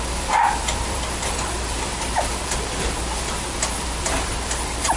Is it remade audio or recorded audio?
remade